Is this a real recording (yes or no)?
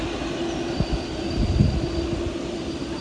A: yes